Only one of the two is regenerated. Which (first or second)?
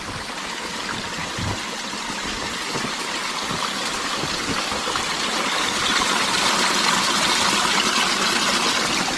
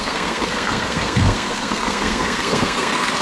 second